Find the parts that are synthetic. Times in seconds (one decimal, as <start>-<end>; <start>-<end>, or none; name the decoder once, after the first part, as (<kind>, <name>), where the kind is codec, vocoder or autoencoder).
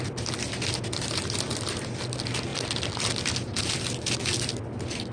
none